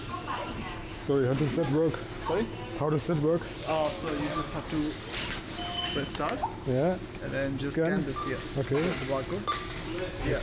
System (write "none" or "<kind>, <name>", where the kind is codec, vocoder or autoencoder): none